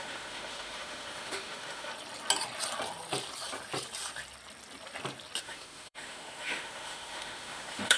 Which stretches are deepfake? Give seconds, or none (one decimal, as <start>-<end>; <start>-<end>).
0.0-1.9; 5.4-8.0